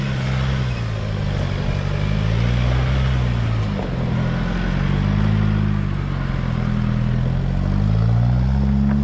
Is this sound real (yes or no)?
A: yes